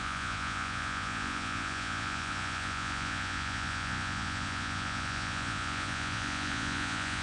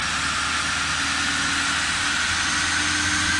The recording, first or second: second